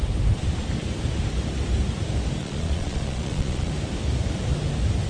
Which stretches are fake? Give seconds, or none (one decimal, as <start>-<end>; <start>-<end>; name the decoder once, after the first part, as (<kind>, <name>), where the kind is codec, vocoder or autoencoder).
2.4-3.7 (vocoder, Vocos)

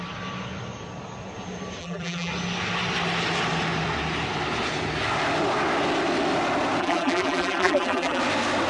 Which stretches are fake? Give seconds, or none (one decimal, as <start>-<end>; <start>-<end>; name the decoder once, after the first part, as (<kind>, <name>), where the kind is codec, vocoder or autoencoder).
1.8-2.3 (vocoder, BigVGAN v2); 6.8-8.2

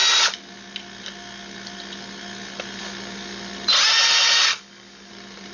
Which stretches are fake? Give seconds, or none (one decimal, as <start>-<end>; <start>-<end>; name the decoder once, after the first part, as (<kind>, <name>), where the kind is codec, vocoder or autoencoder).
4.5-5.1 (codec, DAC)

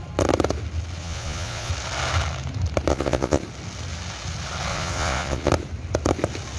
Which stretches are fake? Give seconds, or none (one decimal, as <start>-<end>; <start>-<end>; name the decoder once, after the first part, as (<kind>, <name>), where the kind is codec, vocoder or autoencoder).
1.0-1.7 (vocoder, Vocos); 2.9-3.4; 4.7-5.5

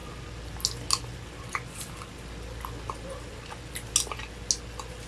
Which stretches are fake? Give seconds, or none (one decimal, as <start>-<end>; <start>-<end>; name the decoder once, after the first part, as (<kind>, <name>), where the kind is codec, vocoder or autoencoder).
none

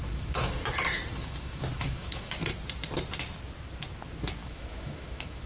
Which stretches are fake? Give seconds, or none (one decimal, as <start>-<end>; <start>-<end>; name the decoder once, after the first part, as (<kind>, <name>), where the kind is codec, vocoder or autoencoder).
0.0-0.6 (autoencoder, DAC-VAE); 1.2-2.4; 4.4-5.5